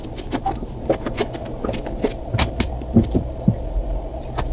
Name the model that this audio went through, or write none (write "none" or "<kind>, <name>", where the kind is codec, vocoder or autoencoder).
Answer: none